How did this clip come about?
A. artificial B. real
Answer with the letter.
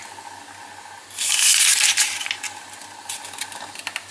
B